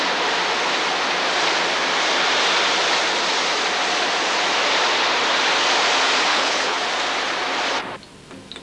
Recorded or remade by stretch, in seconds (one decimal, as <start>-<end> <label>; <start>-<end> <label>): 0.0-6.3 recorded; 6.3-6.8 remade; 6.8-8.6 recorded